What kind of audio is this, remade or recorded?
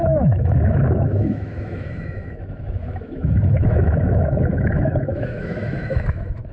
remade